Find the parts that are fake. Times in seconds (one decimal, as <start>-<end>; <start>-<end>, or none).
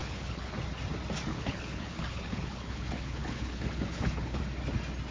0.0-0.5; 1.3-4.4